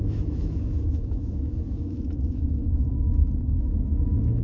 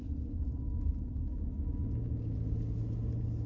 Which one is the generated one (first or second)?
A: first